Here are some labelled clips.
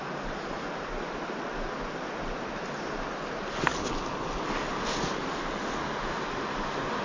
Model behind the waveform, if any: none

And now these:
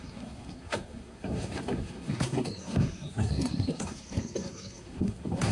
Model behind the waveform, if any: codec, SNAC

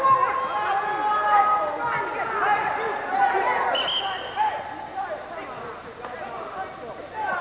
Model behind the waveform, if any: none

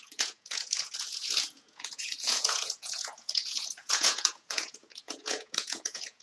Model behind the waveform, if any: vocoder, Vocos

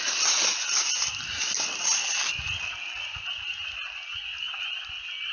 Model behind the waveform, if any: none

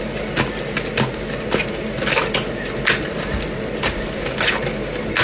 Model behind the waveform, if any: none